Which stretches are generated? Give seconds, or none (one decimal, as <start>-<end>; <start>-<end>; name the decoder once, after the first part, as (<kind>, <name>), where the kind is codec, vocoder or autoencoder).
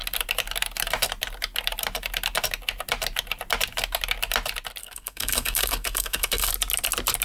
4.8-6.5 (codec, SNAC)